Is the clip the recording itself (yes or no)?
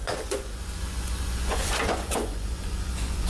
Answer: no